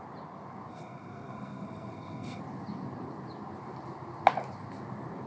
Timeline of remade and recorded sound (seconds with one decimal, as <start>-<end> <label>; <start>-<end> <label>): 0.0-0.7 recorded; 0.7-2.4 remade; 2.4-5.3 recorded